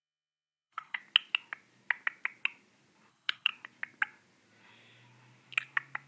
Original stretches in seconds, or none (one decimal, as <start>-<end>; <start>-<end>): 1.0-3.1; 3.5-6.1